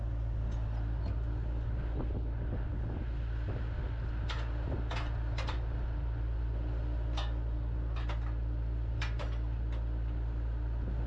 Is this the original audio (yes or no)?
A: yes